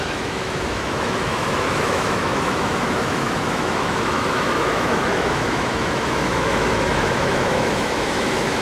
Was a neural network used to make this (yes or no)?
yes